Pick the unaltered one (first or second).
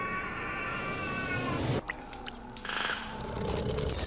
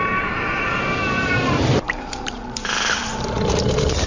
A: first